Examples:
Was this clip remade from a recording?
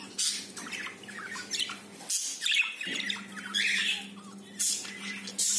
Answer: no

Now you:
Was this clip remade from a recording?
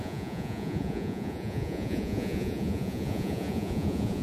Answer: yes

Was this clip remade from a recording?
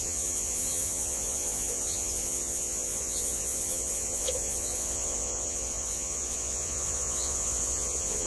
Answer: yes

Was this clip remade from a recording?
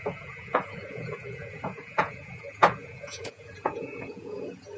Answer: yes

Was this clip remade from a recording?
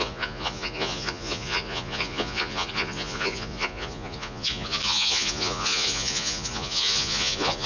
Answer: yes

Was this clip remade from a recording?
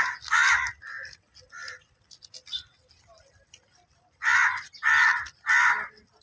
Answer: no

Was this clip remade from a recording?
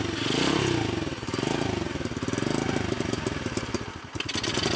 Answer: no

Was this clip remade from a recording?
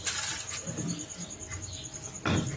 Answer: no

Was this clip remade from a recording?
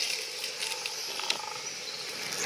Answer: no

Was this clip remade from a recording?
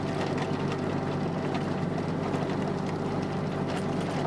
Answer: no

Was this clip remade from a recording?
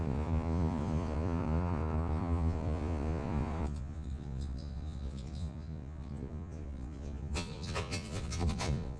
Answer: yes